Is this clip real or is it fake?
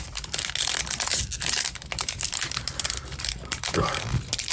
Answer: real